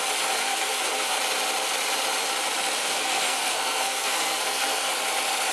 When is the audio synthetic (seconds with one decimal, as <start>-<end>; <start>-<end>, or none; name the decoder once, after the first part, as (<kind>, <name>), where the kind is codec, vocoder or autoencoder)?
0.4-1.2 (codec, SNAC); 2.8-4.9